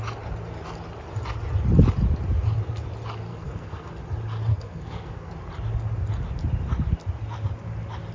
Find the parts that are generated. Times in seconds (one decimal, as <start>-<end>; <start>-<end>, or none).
3.3-3.9; 4.5-5.3